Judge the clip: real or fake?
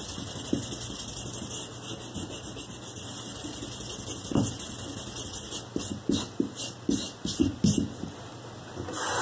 real